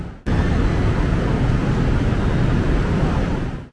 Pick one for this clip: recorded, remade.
recorded